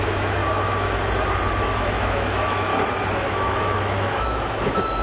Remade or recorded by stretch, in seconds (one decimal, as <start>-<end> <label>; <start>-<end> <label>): 0.0-0.4 remade; 0.4-1.6 recorded; 1.6-2.7 remade; 2.7-3.3 recorded; 3.3-5.0 remade